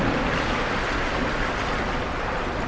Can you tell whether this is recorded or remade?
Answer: recorded